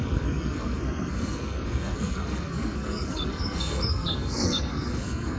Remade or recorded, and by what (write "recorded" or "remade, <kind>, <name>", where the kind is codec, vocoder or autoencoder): remade, codec, SNAC